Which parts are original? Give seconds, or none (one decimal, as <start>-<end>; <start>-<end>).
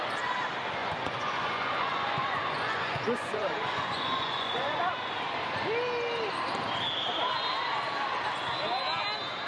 0.0-0.8; 4.9-9.5